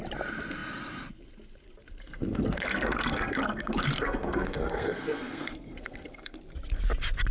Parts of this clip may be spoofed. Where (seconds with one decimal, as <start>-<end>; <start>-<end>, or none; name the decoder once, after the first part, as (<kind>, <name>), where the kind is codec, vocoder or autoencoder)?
2.0-6.4 (codec, SNAC)